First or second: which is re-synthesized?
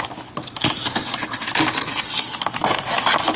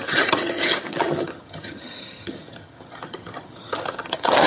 second